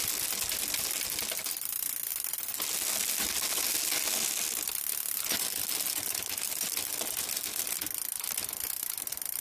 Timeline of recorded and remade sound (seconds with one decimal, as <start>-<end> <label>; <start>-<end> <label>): 0.0-9.4 recorded